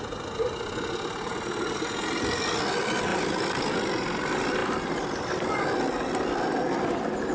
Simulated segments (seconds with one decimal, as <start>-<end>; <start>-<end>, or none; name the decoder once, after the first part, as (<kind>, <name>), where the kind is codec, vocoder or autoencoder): 3.1-4.0 (vocoder, BigVGAN v2)